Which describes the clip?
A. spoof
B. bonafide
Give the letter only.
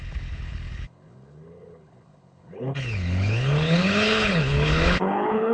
A